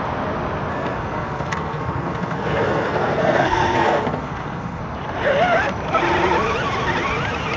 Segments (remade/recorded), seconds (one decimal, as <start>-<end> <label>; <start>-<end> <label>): 0.0-0.7 recorded; 0.7-4.8 remade; 4.8-7.6 recorded